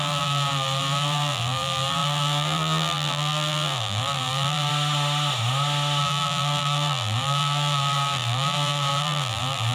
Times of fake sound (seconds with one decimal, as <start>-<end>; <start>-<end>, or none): 0.0-4.7; 6.0-9.7